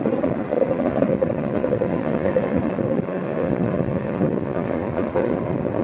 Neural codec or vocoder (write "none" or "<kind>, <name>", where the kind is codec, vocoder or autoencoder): vocoder, Vocos